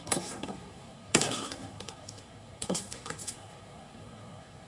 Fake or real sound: fake